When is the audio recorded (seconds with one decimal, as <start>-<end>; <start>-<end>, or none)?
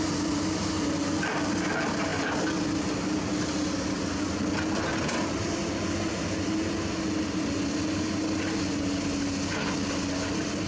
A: 0.0-10.7